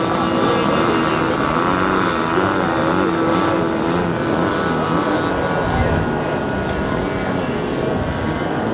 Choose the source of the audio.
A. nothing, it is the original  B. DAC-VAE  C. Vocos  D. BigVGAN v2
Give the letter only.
A